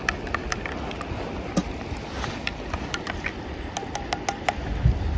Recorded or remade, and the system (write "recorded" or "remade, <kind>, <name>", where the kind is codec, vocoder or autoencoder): recorded